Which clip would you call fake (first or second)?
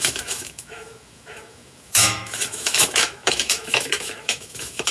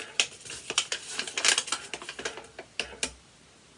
first